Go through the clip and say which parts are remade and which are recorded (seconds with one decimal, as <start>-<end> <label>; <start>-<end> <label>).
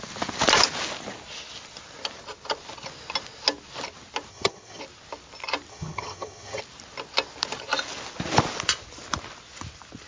0.0-4.3 recorded; 4.3-4.8 remade; 4.8-5.7 recorded; 5.7-6.6 remade; 6.6-10.1 recorded